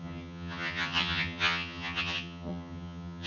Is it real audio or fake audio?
fake